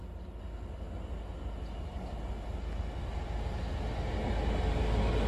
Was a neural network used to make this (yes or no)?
no